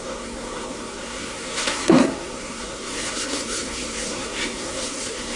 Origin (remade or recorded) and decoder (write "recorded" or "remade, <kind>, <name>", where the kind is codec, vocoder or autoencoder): remade, codec, SNAC